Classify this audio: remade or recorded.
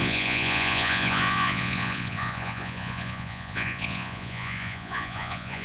remade